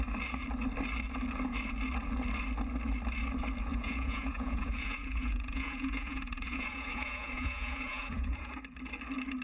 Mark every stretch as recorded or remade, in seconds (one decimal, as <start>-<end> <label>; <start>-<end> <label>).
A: 0.0-3.7 recorded; 3.7-8.5 remade; 8.5-9.4 recorded